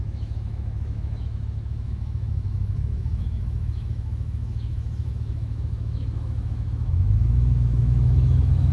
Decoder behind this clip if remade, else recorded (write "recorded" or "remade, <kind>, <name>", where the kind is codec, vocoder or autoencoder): remade, autoencoder, DAC-VAE